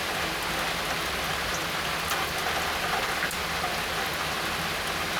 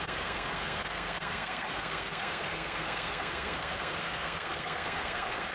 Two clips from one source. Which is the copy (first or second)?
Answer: second